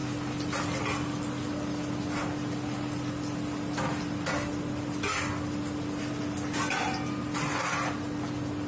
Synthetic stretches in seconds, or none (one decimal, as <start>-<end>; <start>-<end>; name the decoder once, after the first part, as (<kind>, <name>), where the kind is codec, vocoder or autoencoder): none